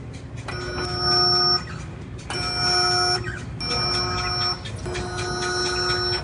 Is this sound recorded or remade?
recorded